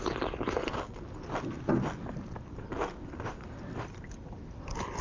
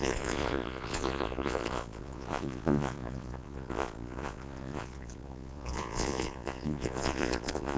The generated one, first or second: second